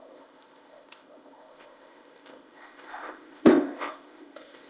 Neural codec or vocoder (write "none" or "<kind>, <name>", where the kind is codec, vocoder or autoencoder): codec, ZipCodec